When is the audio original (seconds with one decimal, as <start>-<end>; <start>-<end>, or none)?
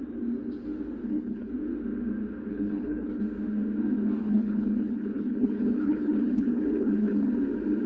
0.0-1.0; 1.5-2.5; 3.2-4.2; 7.3-7.9